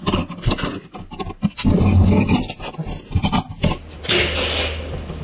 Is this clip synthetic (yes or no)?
no